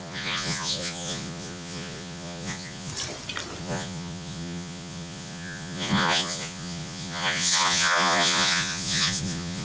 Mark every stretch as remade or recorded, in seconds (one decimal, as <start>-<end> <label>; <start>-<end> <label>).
0.0-2.9 remade; 2.9-3.6 recorded; 3.6-9.6 remade